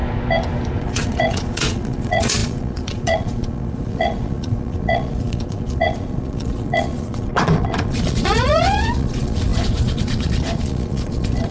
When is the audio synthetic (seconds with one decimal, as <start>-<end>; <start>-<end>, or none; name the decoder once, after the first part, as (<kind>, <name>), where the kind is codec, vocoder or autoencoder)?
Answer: 0.8-11.5 (vocoder, Vocos)

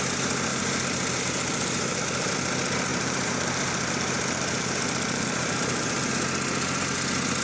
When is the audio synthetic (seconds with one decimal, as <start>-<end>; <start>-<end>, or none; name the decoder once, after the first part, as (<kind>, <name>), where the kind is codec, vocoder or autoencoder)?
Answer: 0.5-2.3 (vocoder, BigVGAN v2); 2.9-6.1